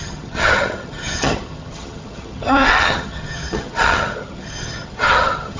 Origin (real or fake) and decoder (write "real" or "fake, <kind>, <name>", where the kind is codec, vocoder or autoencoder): fake, vocoder, HiFi-GAN